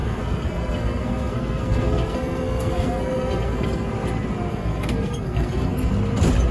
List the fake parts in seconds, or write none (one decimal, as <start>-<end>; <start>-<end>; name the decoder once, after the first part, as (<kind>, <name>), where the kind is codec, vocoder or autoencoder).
0.0-3.9 (codec, SNAC); 4.5-5.9